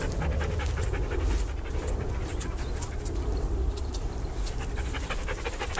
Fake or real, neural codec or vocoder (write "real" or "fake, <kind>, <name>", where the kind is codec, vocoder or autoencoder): real